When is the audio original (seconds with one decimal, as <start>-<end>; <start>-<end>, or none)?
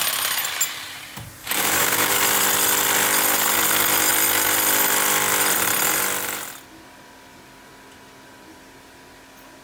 0.0-1.4; 2.2-9.6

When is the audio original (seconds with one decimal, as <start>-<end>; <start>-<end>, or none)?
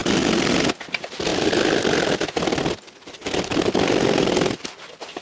0.0-1.3; 2.6-3.5; 4.8-5.2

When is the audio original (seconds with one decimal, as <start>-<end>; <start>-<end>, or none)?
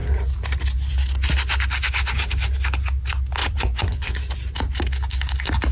0.0-3.4; 4.1-5.7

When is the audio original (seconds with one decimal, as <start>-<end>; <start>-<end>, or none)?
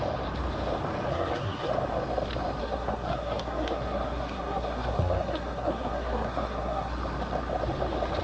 0.0-1.1; 1.7-2.6; 7.0-8.2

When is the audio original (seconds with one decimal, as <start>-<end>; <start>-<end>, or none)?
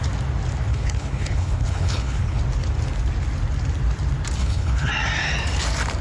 0.0-0.7; 2.4-4.4; 4.9-6.0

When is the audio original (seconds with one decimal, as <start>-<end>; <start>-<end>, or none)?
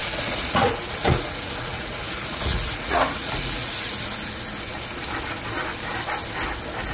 4.0-6.9